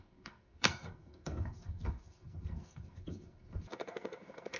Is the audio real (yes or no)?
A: no